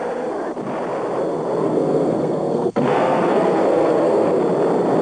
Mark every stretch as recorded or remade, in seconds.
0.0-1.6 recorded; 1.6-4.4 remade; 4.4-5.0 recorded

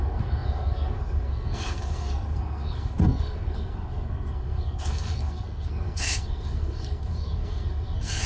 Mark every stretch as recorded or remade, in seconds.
0.0-8.3 remade

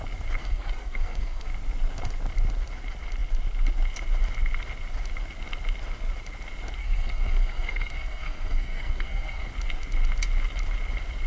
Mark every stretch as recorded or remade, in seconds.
0.0-0.4 recorded; 0.4-1.5 remade; 1.5-6.8 recorded; 6.8-9.5 remade; 9.5-11.3 recorded